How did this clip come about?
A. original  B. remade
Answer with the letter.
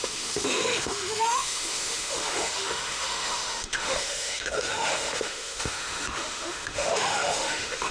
B